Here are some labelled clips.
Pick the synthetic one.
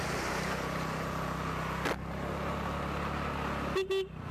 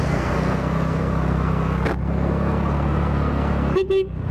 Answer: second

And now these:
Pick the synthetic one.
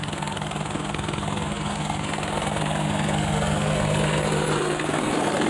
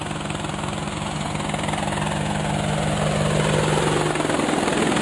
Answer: first